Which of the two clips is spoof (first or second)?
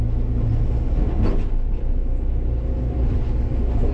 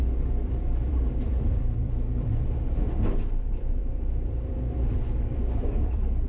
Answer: second